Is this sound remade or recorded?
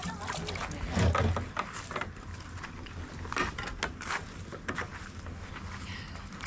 recorded